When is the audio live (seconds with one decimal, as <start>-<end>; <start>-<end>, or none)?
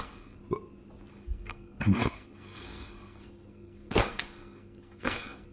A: 0.4-1.1